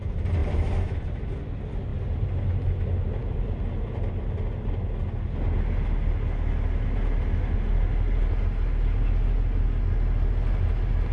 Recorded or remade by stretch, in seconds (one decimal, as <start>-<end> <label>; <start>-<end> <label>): 0.0-11.1 recorded